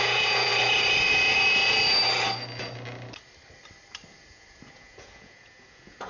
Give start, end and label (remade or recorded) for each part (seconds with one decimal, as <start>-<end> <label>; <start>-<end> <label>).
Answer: 0.0-0.5 remade; 0.5-4.2 recorded; 4.2-6.1 remade